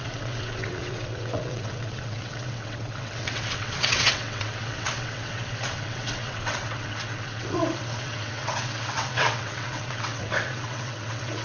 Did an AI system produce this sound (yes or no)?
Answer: yes